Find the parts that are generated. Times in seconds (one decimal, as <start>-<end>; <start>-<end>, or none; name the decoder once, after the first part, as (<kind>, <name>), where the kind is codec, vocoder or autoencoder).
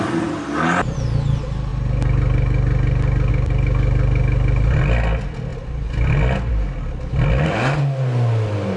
none